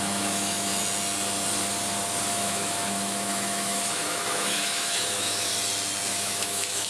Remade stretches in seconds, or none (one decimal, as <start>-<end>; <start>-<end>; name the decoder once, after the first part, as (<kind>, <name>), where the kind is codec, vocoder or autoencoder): 0.0-0.7 (autoencoder, DAC-VAE); 2.3-5.5; 6.1-6.9